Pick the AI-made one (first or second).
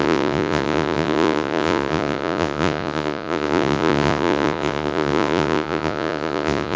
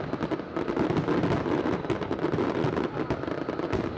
first